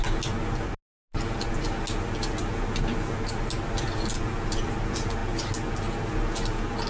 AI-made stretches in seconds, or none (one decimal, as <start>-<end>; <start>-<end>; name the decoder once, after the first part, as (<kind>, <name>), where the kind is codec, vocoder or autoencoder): none